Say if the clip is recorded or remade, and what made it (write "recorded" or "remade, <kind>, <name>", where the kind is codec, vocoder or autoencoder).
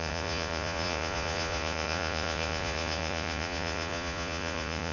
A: remade, vocoder, Vocos